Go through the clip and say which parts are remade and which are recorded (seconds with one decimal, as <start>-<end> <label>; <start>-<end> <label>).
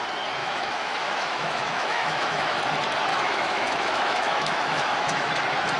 0.0-0.4 recorded; 0.4-2.6 remade; 2.6-3.1 recorded; 3.1-5.3 remade; 5.3-5.8 recorded